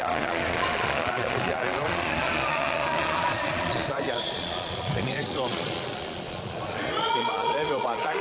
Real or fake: fake